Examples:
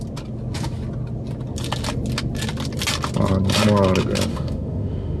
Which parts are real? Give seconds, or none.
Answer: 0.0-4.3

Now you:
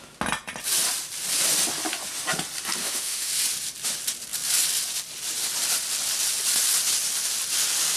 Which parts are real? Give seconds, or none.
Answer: 0.0-2.8; 3.3-8.0

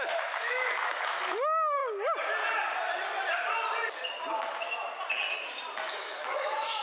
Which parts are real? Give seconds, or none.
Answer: 1.8-5.9

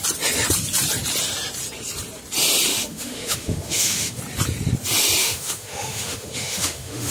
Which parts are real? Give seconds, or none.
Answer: 0.0-2.7; 4.2-5.2

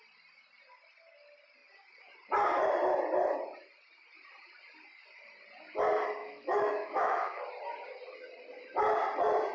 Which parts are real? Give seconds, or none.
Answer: 0.0-6.2; 7.4-9.5